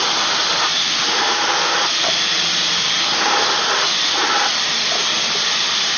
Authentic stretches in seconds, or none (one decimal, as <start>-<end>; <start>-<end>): none